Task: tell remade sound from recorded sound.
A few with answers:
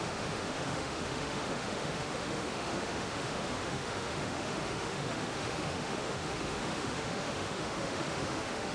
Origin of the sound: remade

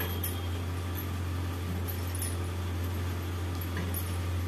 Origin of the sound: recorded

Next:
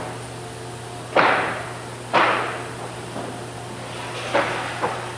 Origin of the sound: recorded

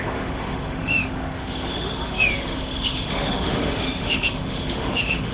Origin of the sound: remade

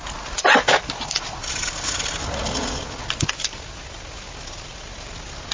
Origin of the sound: recorded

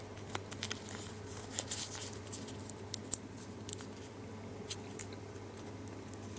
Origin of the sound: recorded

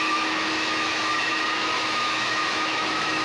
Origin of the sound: remade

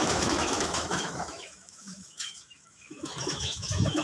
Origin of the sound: remade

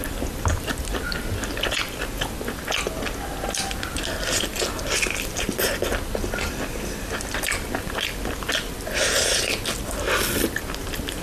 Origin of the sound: recorded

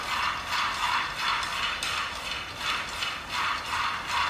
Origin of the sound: recorded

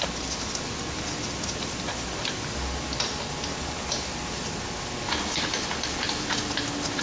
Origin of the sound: recorded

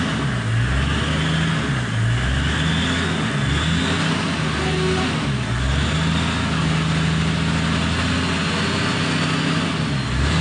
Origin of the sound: recorded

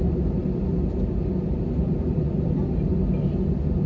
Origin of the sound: recorded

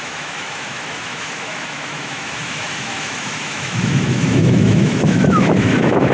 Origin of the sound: remade